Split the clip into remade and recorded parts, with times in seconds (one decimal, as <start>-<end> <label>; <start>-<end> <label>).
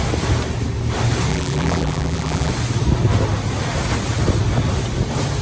0.0-1.3 recorded; 1.3-2.5 remade; 2.5-5.4 recorded